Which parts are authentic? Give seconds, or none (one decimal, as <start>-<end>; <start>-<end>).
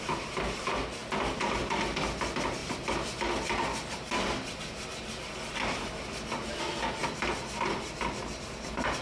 0.0-2.6; 3.2-9.0